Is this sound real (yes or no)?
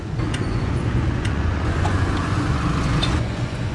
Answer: no